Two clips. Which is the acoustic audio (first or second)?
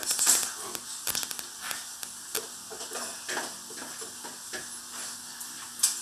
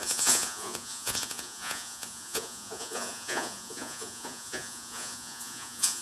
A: first